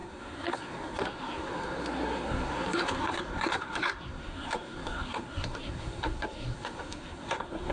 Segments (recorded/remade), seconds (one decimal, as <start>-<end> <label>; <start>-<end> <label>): 0.0-7.7 remade